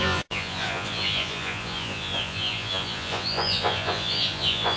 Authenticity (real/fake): fake